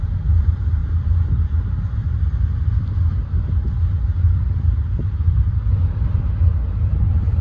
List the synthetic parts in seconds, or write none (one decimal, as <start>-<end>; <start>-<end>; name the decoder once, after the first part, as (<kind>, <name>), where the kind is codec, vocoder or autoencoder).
none